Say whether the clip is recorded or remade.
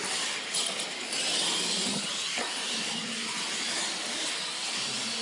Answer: recorded